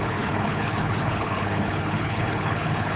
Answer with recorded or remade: remade